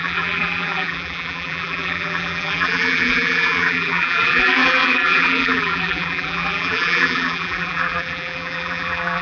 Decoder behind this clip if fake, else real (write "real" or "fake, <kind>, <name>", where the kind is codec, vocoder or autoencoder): fake, vocoder, BigVGAN v2